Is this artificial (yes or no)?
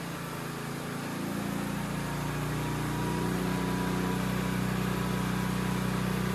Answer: no